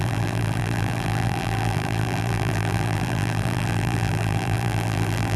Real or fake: fake